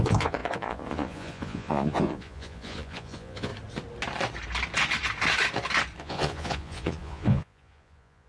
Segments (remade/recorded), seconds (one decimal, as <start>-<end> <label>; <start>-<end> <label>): 0.0-3.5 remade; 3.5-6.0 recorded; 6.0-8.3 remade